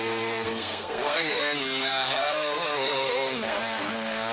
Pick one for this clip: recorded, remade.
remade